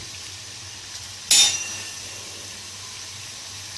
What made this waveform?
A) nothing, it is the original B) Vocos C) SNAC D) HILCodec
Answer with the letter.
A